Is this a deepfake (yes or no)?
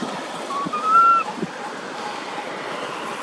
no